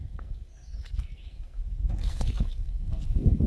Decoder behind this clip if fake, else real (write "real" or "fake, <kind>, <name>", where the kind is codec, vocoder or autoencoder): fake, codec, SNAC